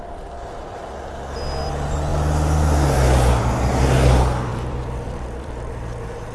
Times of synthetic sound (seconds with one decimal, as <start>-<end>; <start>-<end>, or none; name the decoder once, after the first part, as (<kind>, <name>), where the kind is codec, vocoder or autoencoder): 0.0-0.8 (vocoder, BigVGAN v2); 4.5-5.7